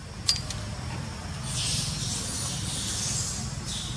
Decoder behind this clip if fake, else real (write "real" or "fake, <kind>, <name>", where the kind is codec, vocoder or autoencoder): real